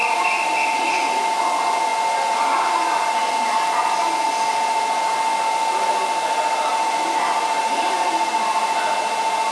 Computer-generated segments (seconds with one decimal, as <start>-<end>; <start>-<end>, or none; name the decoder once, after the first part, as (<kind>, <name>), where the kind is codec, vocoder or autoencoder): none